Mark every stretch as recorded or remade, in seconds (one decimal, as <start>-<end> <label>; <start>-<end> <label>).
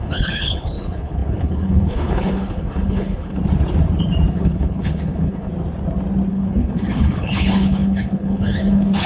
0.0-3.4 remade; 3.4-4.3 recorded; 4.3-5.5 remade; 5.5-6.3 recorded; 6.3-9.1 remade